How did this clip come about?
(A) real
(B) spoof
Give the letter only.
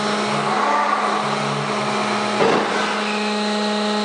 A